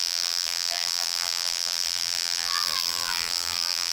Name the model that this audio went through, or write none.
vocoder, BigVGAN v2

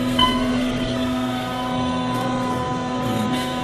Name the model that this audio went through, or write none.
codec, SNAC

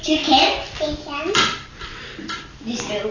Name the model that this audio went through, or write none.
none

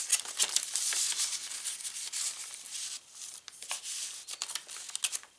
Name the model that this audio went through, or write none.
none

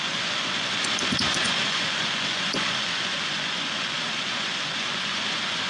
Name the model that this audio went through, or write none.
vocoder, Vocos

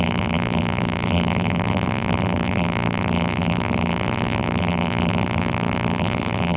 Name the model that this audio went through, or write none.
vocoder, BigVGAN v2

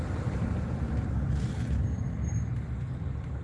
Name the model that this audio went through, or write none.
none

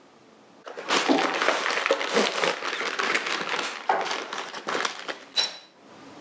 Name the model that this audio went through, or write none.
none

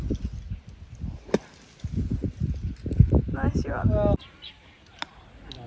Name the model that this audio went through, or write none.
none